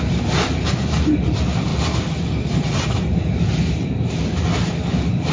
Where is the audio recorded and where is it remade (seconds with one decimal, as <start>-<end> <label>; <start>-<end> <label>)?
0.0-1.7 remade; 1.7-3.7 recorded; 3.7-5.3 remade